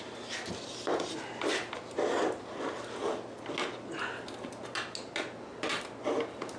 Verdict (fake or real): real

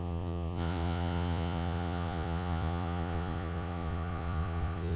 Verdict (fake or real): fake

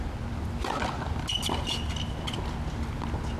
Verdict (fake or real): real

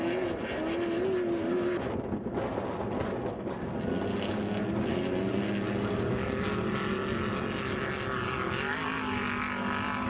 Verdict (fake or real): real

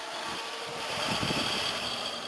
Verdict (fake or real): fake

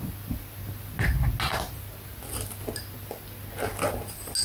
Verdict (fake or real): real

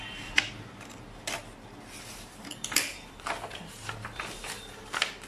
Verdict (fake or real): fake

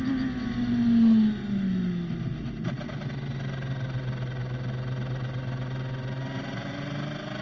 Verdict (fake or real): real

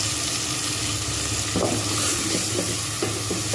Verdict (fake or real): real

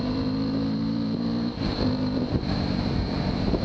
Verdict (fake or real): fake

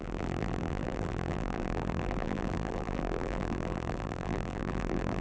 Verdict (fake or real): fake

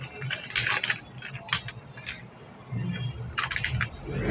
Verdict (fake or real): real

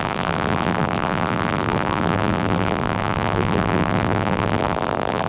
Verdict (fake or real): fake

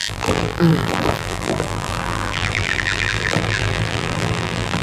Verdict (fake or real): fake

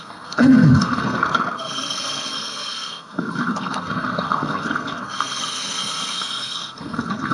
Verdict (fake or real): fake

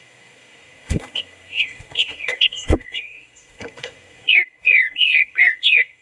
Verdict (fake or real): fake